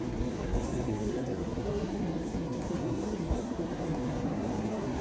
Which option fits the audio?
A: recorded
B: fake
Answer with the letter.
B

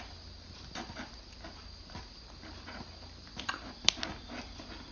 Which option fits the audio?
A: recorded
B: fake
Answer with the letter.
A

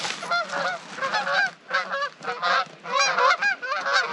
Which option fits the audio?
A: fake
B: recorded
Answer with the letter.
B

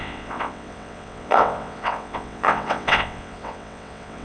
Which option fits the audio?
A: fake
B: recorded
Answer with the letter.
A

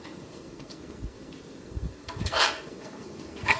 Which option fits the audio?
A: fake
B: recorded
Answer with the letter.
A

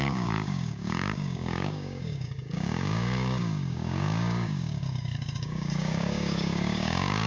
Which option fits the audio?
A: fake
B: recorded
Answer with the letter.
A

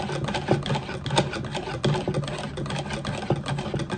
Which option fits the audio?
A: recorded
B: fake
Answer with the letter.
A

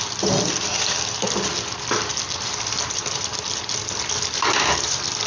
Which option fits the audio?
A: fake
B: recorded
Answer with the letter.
B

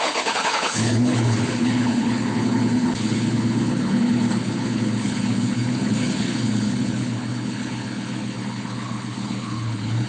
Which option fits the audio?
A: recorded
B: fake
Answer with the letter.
B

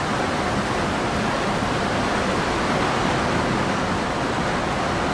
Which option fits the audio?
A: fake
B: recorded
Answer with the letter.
B